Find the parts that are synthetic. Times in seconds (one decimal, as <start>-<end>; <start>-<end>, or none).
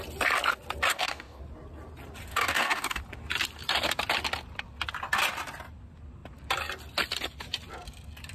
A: 0.9-1.4; 2.3-3.0